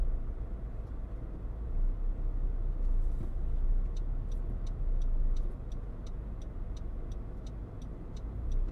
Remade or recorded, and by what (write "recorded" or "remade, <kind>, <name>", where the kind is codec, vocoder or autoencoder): recorded